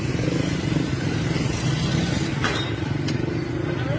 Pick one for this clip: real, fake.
real